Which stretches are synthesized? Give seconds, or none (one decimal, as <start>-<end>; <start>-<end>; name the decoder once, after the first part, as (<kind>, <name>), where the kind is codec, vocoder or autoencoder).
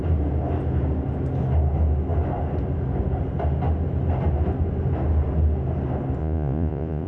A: 6.2-7.1 (vocoder, Vocos)